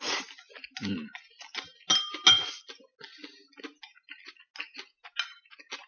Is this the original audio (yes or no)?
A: yes